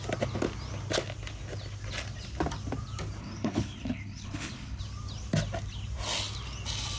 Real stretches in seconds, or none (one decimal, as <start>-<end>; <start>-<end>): 0.0-3.2; 4.8-7.0